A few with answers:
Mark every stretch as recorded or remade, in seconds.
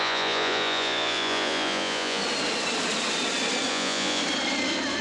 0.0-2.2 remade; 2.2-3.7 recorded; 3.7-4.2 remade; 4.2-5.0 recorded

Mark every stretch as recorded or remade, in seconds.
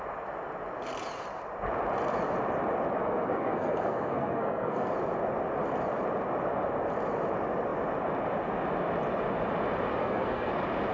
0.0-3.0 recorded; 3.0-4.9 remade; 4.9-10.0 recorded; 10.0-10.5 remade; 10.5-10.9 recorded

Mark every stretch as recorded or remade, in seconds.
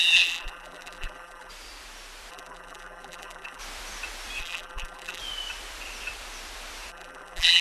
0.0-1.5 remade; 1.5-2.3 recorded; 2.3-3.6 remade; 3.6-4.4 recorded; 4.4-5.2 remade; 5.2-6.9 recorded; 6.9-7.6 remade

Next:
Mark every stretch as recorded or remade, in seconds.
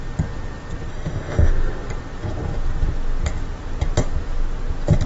0.0-0.9 recorded; 0.9-1.5 remade; 1.5-5.1 recorded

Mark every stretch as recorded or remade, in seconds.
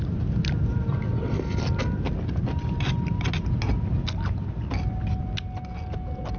0.0-6.4 recorded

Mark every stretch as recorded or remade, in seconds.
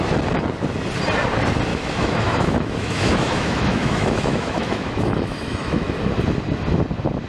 0.0-1.7 recorded; 1.7-6.1 remade; 6.1-7.3 recorded